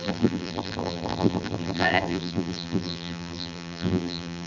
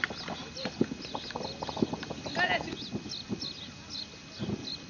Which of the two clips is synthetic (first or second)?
first